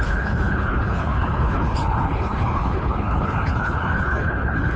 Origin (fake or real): fake